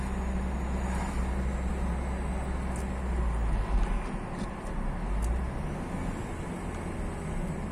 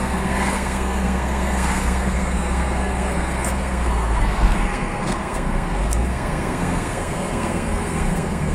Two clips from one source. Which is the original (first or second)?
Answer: first